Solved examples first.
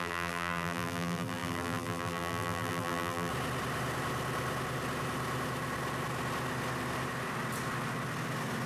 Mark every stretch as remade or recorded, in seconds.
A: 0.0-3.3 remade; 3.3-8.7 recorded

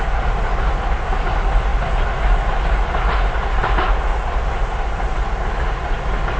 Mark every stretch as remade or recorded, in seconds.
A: 0.0-6.4 recorded

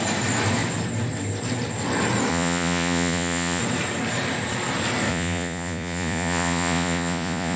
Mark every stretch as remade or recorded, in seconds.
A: 0.0-2.3 recorded; 2.3-3.6 remade; 3.6-5.1 recorded; 5.1-7.6 remade

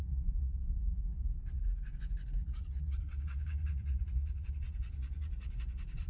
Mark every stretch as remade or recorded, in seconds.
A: 0.0-1.6 remade; 1.6-2.4 recorded; 2.4-6.1 remade

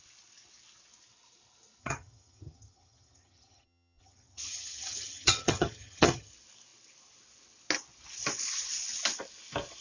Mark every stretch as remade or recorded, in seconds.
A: 0.0-1.8 recorded; 1.8-6.3 remade; 6.3-9.8 recorded

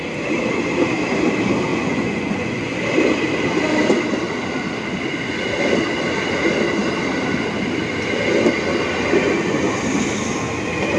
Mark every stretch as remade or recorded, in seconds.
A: 0.0-1.7 recorded; 1.7-2.8 remade; 2.8-9.2 recorded; 9.2-9.7 remade; 9.7-11.0 recorded

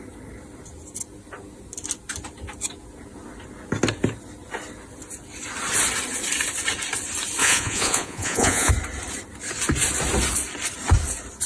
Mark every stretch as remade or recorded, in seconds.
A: 0.0-7.4 recorded; 7.4-8.7 remade; 8.7-11.5 recorded

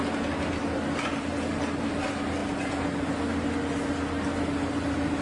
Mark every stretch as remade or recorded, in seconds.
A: 0.0-5.2 recorded